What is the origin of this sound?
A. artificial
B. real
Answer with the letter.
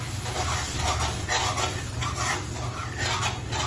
B